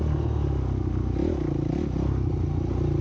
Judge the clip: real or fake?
real